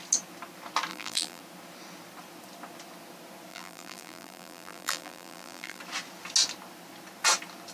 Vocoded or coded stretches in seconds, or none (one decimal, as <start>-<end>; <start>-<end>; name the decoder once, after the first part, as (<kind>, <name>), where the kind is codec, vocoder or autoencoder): 0.9-1.4 (vocoder, BigVGAN v2); 3.5-5.8